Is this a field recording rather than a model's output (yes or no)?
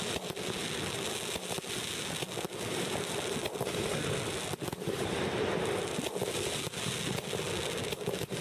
yes